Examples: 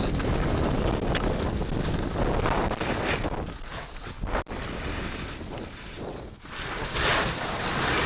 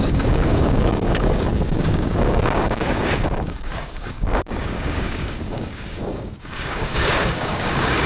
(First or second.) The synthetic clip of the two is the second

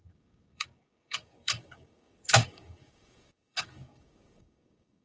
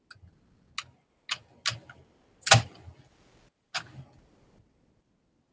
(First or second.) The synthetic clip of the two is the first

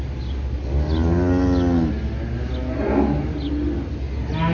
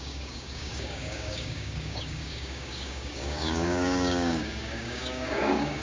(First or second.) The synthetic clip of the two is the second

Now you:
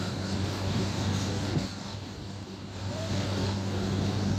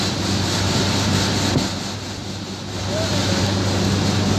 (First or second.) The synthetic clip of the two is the first